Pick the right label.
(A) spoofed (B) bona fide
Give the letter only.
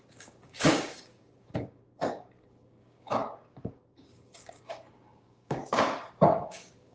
A